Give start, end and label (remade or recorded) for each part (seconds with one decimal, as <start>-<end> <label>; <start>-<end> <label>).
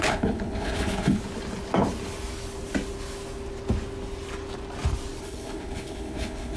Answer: 0.0-1.2 remade; 1.2-5.2 recorded; 5.2-6.6 remade